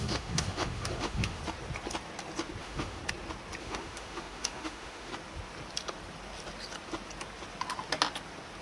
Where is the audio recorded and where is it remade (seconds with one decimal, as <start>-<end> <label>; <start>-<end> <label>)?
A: 0.0-1.4 remade; 1.4-2.6 recorded; 2.6-3.0 remade; 3.0-3.6 recorded; 3.6-5.1 remade; 5.1-8.6 recorded